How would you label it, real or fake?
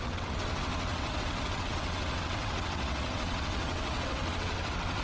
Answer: fake